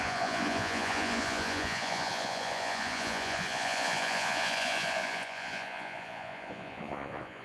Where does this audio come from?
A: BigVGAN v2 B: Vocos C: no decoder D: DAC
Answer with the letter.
B